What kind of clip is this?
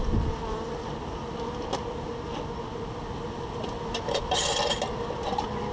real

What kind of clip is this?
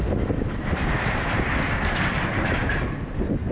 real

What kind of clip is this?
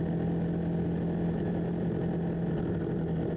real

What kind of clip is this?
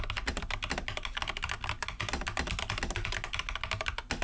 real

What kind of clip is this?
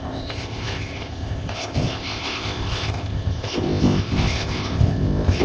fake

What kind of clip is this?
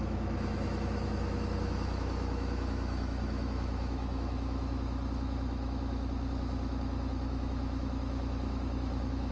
fake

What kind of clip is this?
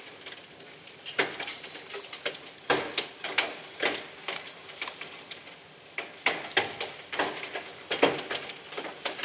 real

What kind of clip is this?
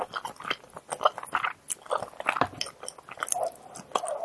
real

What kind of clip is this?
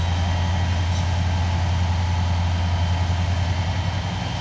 real